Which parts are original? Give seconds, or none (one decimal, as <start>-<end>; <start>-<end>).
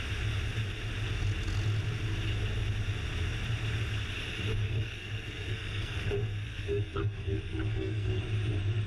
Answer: 0.0-4.6; 8.2-8.9